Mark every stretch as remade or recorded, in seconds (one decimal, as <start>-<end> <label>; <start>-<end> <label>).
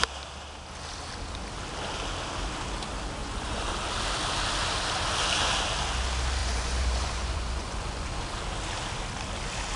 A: 0.0-3.2 recorded; 3.2-3.7 remade; 3.7-6.4 recorded; 6.4-8.2 remade; 8.2-9.8 recorded